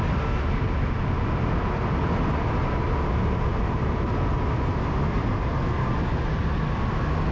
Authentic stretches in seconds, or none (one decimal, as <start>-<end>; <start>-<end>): 0.0-7.3